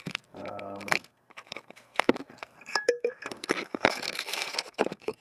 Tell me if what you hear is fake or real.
fake